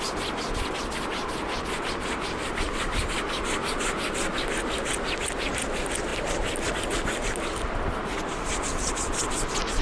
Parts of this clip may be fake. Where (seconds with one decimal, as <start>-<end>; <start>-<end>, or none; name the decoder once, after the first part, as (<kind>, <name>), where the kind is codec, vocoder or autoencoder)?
none